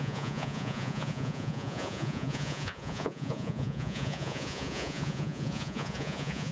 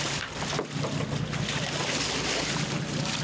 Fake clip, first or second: first